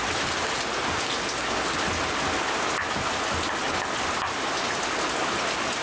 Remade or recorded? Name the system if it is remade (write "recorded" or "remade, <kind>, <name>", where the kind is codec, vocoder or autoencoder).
recorded